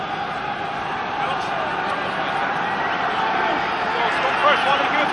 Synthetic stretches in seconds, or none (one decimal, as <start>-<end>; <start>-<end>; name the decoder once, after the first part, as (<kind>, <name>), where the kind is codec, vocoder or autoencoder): 2.4-3.7 (vocoder, BigVGAN v2); 4.4-5.1